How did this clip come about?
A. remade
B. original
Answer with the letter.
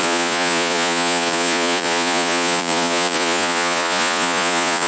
A